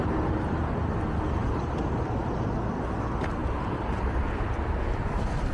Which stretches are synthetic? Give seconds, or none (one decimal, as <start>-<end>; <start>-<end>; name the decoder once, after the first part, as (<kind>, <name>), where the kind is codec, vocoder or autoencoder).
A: 1.4-2.4 (vocoder, BigVGAN v2); 3.4-4.0